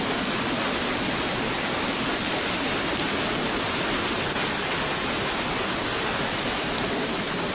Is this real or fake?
real